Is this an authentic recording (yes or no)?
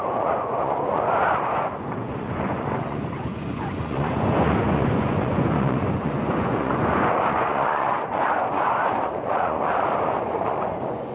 no